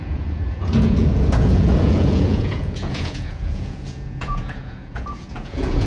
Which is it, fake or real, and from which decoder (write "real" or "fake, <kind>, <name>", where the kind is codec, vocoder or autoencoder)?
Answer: fake, vocoder, Vocos